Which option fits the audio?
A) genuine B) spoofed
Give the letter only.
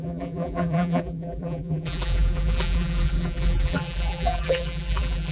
B